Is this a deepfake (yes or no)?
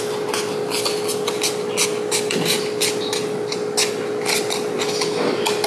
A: no